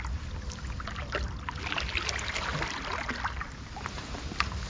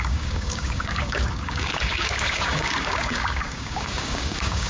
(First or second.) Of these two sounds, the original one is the first